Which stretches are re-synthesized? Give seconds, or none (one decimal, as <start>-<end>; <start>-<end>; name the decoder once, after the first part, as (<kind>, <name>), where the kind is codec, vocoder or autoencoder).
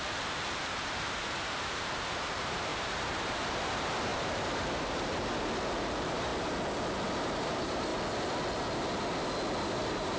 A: 0.0-6.3 (vocoder, BigVGAN v2); 7.2-7.9; 9.7-10.2